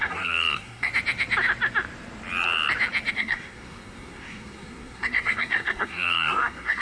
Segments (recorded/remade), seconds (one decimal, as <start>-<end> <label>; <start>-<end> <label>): 0.0-0.9 remade; 0.9-3.1 recorded; 3.1-6.8 remade